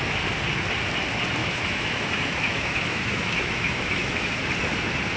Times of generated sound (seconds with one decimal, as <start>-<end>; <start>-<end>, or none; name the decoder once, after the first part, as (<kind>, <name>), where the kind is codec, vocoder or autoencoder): 1.4-4.5 (autoencoder, DAC-VAE)